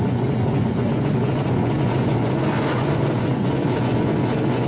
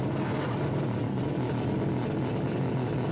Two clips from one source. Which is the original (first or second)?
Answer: second